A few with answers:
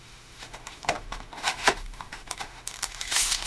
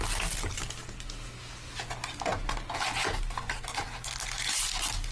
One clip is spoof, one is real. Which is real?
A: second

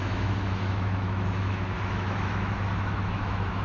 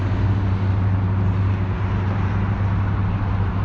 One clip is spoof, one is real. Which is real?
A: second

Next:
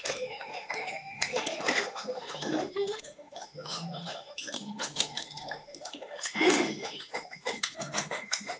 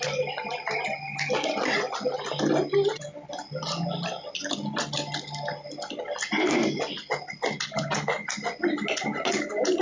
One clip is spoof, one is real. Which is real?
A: second